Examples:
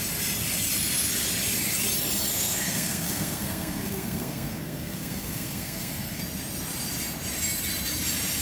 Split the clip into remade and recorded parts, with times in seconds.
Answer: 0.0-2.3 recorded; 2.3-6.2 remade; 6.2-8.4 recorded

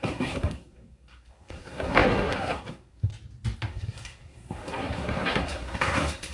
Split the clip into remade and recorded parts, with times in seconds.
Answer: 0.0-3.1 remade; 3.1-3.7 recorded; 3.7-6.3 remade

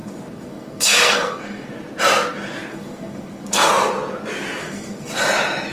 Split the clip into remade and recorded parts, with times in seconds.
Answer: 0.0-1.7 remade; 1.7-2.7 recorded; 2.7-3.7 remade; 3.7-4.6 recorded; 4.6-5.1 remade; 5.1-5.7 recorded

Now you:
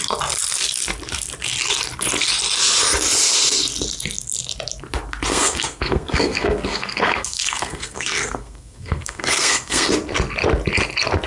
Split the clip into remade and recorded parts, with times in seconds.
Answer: 0.0-5.3 recorded; 5.3-9.9 remade; 9.9-11.3 recorded